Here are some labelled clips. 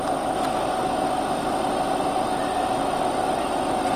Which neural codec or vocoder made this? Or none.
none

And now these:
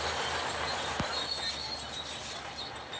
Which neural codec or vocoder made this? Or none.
none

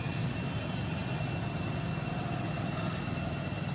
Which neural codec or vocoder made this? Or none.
none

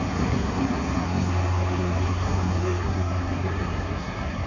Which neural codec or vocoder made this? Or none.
codec, SNAC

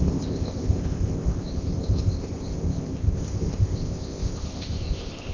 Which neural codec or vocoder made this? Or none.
codec, ZipCodec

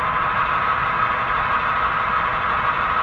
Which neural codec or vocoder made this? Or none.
none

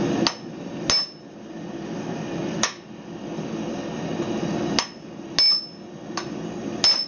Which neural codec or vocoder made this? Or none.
none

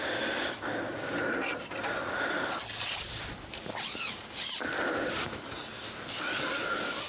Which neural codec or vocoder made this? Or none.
none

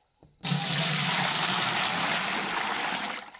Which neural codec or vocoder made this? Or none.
none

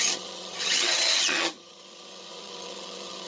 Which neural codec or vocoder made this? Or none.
vocoder, HiFi-GAN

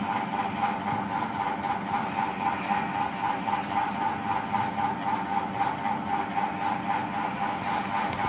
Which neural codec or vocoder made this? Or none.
none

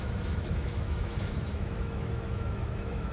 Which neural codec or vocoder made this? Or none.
autoencoder, DAC-VAE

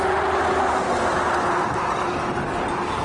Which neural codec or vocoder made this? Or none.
none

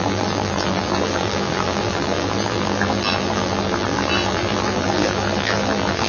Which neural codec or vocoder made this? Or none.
vocoder, BigVGAN v2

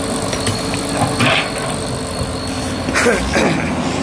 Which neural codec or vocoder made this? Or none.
none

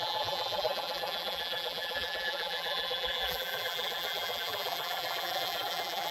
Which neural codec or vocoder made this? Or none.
vocoder, BigVGAN v2